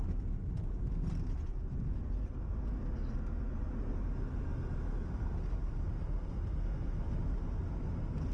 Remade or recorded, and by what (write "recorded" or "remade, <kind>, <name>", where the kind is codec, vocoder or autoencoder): recorded